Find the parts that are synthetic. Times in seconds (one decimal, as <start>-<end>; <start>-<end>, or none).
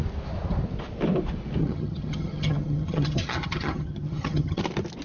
1.6-4.6